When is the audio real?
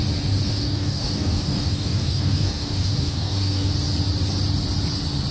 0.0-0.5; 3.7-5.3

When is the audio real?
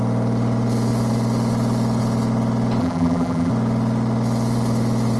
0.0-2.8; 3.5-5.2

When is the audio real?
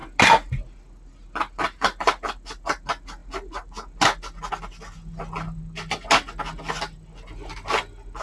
0.0-8.2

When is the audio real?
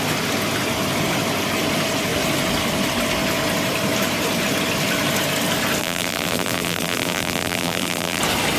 0.0-5.8; 8.2-8.6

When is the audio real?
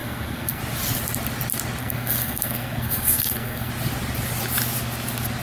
0.6-1.8; 3.7-5.4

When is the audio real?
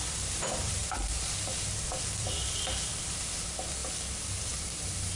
3.8-4.4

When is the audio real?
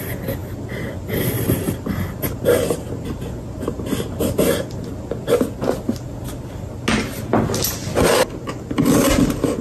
0.0-9.6